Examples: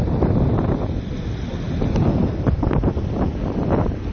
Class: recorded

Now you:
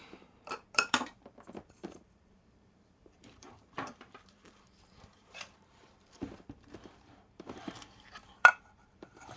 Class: remade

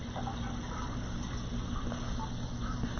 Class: recorded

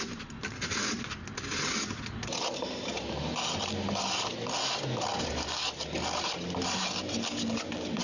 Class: recorded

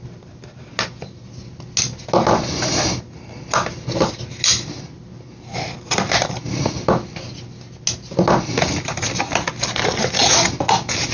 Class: recorded